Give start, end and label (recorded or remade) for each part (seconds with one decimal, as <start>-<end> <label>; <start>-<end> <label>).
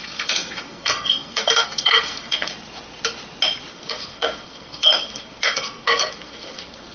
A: 0.0-2.5 remade; 2.5-3.7 recorded; 3.7-6.9 remade